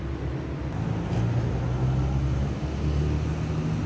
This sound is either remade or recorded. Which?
recorded